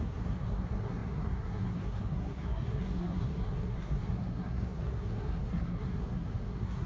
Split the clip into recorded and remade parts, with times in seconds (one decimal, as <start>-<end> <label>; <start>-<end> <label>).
0.0-6.9 remade